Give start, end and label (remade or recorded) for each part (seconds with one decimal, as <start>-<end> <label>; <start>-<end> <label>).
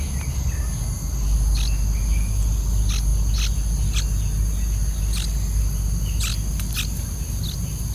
0.0-7.9 recorded